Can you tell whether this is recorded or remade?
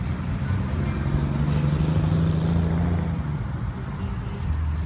recorded